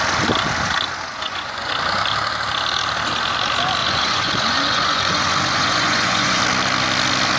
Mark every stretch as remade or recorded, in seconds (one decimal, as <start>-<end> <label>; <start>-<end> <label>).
0.0-1.1 recorded; 1.1-1.7 remade; 1.7-3.8 recorded; 3.8-6.4 remade; 6.4-7.4 recorded